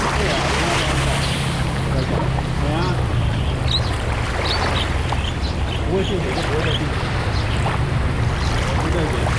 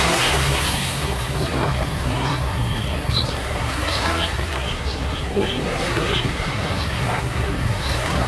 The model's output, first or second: second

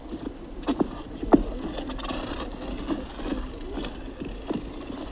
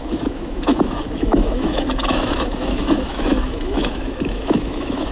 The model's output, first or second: second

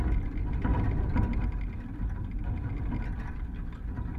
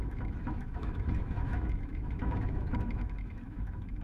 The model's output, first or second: second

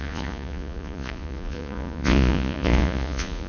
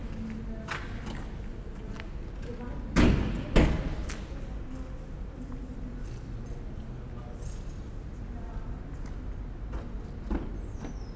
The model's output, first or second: first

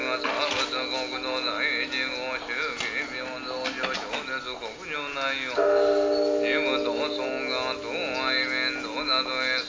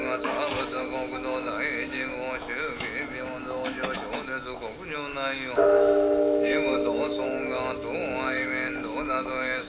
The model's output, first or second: second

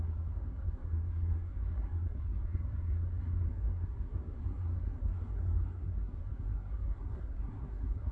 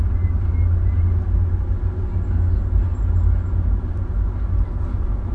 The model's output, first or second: first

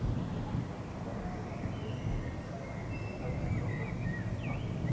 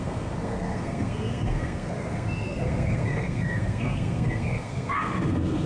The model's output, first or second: second